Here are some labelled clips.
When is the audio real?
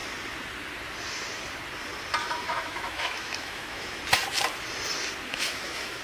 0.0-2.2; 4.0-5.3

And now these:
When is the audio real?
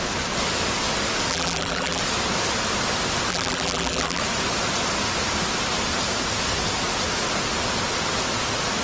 0.0-1.3; 2.0-3.3; 4.2-8.8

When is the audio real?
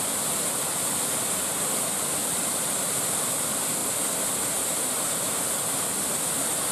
0.0-2.2; 2.7-6.7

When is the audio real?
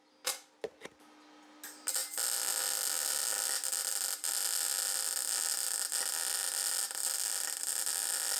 0.0-8.4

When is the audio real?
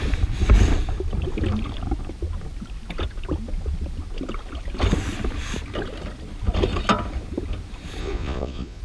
0.0-8.0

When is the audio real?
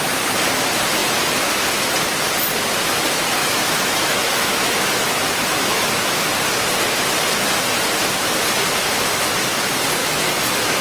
0.0-3.4; 6.4-10.0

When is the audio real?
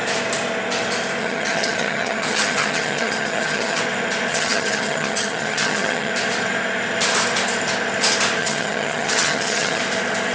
0.0-1.2; 3.8-4.3; 6.1-8.4; 9.8-10.3